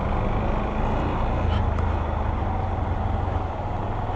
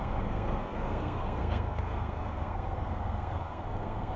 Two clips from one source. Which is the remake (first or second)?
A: second